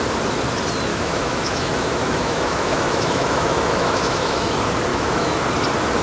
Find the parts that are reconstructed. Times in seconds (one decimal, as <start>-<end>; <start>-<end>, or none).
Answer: 0.9-4.5; 4.9-5.4